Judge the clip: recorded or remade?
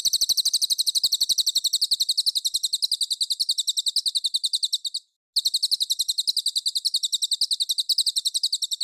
recorded